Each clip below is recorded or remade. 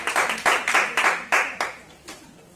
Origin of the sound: recorded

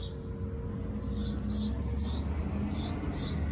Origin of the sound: recorded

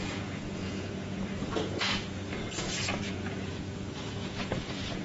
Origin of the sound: remade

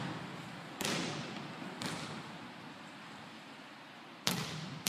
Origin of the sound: recorded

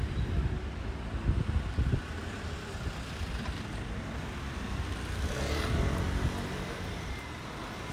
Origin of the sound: recorded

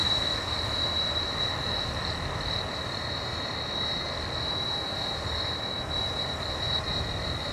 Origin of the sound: recorded